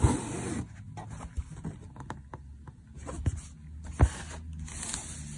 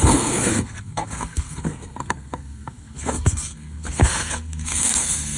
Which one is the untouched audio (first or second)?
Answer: first